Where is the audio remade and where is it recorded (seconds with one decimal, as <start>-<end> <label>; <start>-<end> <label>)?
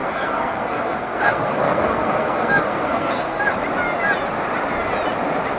0.0-3.4 remade; 3.4-5.6 recorded